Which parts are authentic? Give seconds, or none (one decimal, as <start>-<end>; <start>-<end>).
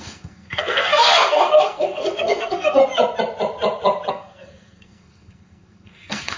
2.8-4.1